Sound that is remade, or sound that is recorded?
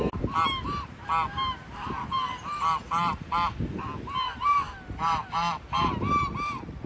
recorded